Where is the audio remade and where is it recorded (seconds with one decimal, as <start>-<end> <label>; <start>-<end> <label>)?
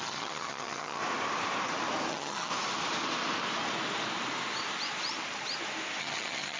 0.0-1.0 remade; 1.0-2.1 recorded; 2.1-2.5 remade; 2.5-6.0 recorded; 6.0-6.6 remade